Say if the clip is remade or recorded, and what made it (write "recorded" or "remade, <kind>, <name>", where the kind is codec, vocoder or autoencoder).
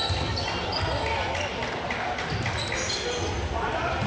recorded